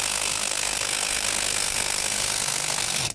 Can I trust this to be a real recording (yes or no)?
no